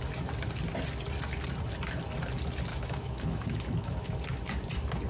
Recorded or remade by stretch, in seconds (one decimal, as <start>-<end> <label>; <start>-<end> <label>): 0.0-2.7 recorded; 2.7-4.2 remade; 4.2-5.1 recorded